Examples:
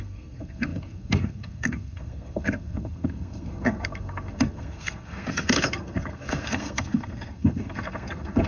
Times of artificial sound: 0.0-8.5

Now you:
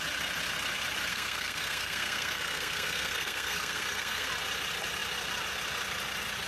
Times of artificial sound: 1.1-4.3

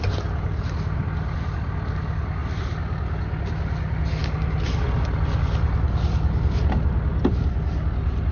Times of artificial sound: none